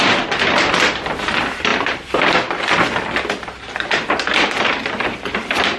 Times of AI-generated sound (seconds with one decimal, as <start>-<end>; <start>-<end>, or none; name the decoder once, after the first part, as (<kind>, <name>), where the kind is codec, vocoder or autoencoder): none